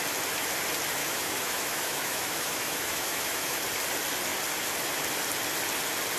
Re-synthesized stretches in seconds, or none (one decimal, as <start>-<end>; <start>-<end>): 1.0-3.6